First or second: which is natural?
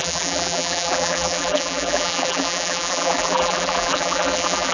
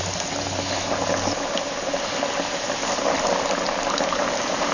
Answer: second